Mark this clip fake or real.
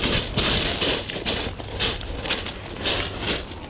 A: real